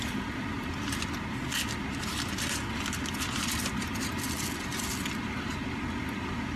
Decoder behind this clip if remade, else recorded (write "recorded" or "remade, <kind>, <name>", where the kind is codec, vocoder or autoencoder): recorded